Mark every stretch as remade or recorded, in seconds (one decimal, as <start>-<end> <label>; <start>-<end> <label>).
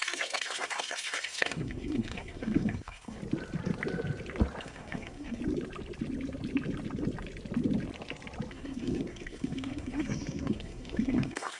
0.0-3.2 remade; 3.2-4.6 recorded; 4.6-5.4 remade; 5.4-8.5 recorded; 8.5-11.6 remade